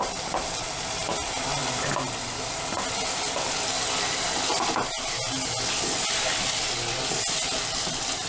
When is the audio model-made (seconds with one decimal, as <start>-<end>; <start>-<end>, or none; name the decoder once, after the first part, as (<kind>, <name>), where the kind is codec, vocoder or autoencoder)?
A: none